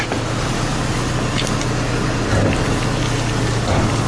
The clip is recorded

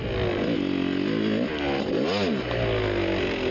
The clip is recorded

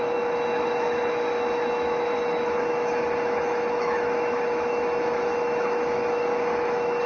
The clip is remade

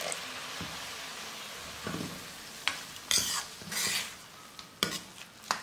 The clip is recorded